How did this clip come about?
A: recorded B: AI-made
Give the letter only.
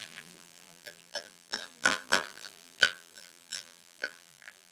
B